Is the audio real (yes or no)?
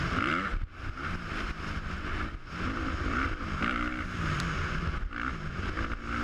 yes